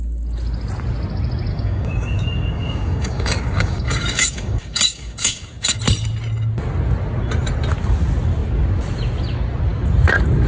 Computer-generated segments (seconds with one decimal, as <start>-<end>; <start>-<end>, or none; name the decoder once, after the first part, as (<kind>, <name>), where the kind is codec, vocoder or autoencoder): 1.5-5.8 (codec, DAC)